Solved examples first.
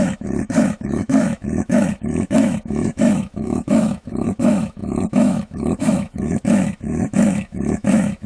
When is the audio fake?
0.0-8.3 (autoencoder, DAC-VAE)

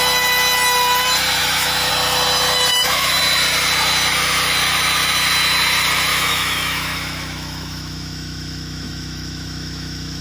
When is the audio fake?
1.4-1.9 (autoencoder, DAC-VAE); 2.7-3.2; 6.1-10.2

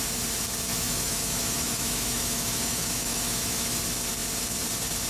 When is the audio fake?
0.7-3.8 (autoencoder, DAC-VAE)

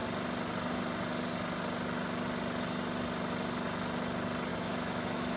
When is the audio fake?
4.5-5.4 (autoencoder, DAC-VAE)